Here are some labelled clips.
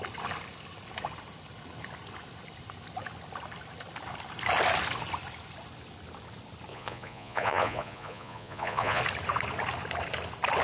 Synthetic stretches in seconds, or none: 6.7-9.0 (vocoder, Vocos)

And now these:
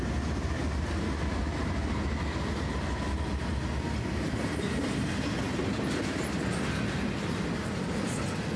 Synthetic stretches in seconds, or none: none

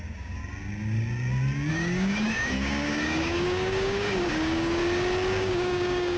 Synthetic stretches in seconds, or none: 0.0-0.4 (codec, DAC); 1.7-4.8; 5.4-6.2

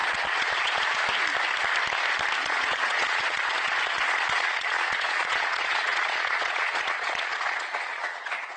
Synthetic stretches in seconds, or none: 0.0-1.0 (vocoder, Vocos); 2.4-8.6

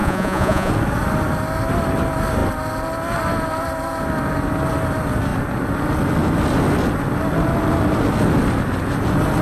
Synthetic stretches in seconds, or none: 0.0-0.7 (vocoder, Vocos)

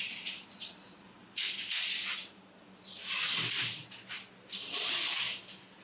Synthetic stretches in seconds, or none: none

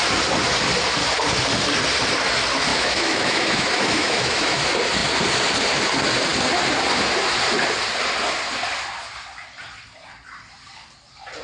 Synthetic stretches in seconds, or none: 2.7-4.6 (autoencoder, DAC-VAE)